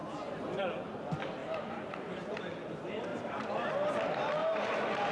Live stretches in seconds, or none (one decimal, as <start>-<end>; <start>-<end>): 0.6-1.4; 2.4-3.1; 3.7-4.4

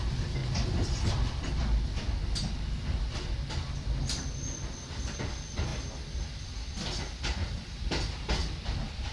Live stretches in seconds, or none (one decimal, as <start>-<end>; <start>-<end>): 0.0-7.4; 8.3-9.1

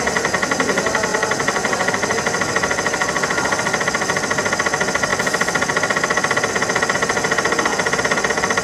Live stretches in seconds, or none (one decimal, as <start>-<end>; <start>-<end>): 0.0-1.1; 1.9-5.1; 6.5-8.6

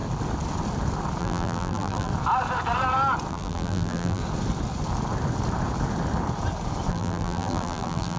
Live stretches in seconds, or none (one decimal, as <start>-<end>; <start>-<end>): 0.0-1.2; 2.1-3.3; 4.2-6.9

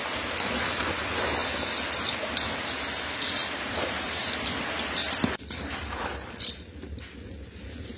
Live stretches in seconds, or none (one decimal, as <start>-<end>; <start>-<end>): 0.0-3.4; 6.4-8.0

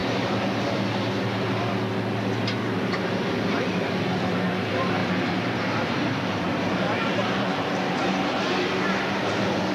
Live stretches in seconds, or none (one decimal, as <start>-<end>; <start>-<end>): 0.0-5.0; 8.4-9.7

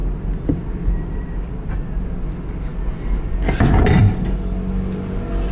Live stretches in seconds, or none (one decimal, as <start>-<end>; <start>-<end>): 1.5-5.5